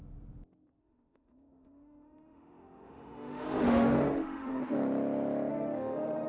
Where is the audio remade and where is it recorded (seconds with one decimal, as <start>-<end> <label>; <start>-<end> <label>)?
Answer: 0.0-0.8 recorded; 0.8-4.6 remade; 4.6-5.5 recorded; 5.5-6.3 remade